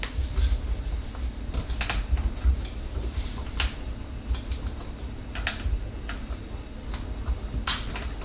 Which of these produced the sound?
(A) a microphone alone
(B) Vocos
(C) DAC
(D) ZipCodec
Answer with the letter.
A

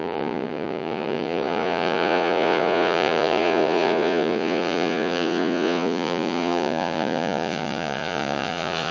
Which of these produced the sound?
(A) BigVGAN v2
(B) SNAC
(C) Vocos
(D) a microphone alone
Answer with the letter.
C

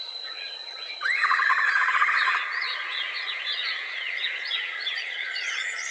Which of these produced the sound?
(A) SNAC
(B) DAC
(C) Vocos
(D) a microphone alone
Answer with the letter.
C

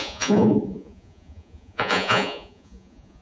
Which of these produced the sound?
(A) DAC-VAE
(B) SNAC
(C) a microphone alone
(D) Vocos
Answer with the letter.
D